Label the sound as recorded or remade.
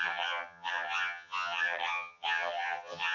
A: remade